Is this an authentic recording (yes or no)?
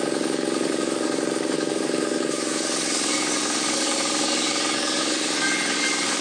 no